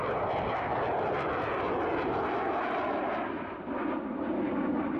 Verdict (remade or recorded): recorded